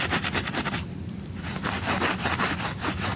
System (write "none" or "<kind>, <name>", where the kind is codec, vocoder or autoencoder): vocoder, BigVGAN v2